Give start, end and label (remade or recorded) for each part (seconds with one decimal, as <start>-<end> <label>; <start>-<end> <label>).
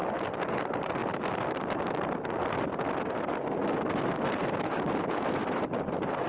0.0-0.5 recorded; 0.5-1.0 remade; 1.0-4.3 recorded; 4.3-6.3 remade